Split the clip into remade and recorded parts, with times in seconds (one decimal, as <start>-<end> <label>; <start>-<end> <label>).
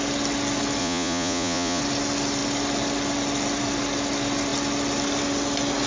0.0-0.8 recorded; 0.8-1.8 remade; 1.8-5.9 recorded